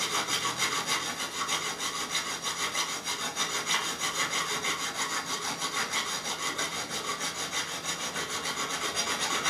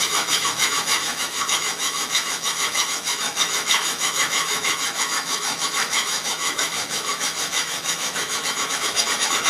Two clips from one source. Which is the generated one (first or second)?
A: second